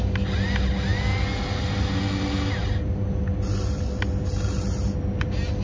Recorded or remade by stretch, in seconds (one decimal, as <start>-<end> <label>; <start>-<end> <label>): 0.0-5.6 recorded